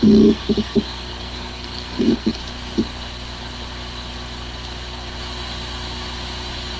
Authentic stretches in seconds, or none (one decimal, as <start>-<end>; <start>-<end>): 2.4-6.8